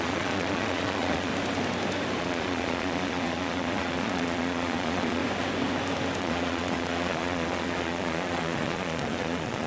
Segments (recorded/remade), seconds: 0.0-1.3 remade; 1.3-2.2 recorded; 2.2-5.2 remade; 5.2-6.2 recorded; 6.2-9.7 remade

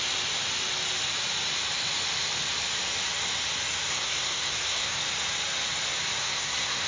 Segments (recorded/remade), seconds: 0.0-3.9 recorded; 3.9-5.0 remade; 5.0-6.2 recorded; 6.2-6.9 remade

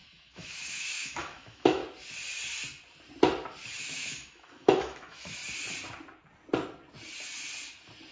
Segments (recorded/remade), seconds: 0.0-1.8 remade; 1.8-3.8 recorded; 3.8-5.4 remade; 5.4-8.1 recorded

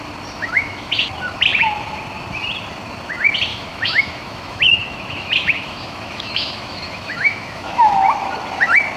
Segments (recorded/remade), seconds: 0.0-0.4 recorded; 0.4-0.9 remade; 0.9-3.5 recorded; 3.5-8.3 remade; 8.3-9.0 recorded

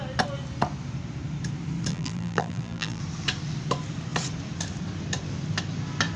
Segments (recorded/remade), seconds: 0.0-1.9 recorded; 1.9-3.0 remade; 3.0-6.2 recorded

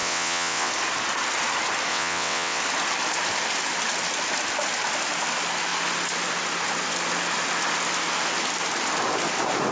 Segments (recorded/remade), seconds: 0.0-0.7 remade; 0.7-1.9 recorded; 1.9-2.6 remade; 2.6-9.7 recorded

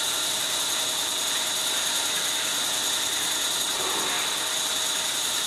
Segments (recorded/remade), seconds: 0.0-5.5 recorded